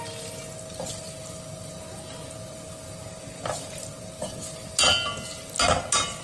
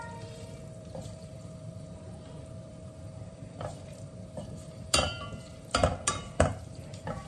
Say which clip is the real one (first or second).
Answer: first